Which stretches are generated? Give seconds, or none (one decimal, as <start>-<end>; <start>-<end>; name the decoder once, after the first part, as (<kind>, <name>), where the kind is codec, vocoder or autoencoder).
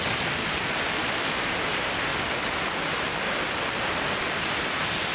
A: 0.4-1.2 (vocoder, BigVGAN v2); 2.1-2.6